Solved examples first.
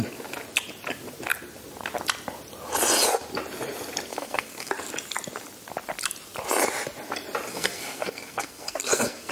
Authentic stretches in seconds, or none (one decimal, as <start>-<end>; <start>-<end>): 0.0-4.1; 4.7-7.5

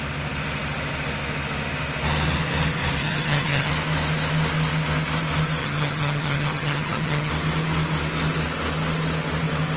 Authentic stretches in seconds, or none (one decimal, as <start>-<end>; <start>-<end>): 0.0-3.0; 3.7-5.6; 7.3-9.8

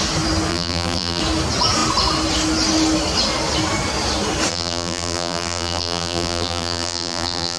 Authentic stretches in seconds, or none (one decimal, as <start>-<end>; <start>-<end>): 0.0-0.5; 1.2-4.5

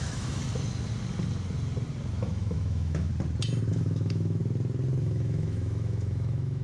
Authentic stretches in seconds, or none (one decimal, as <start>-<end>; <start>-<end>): 0.4-2.1; 3.1-3.7; 4.4-5.0

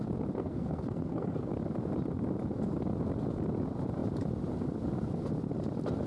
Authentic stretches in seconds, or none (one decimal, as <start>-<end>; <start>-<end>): 0.0-0.4; 1.5-6.1